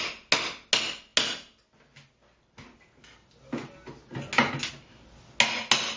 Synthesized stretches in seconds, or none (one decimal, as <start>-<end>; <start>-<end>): none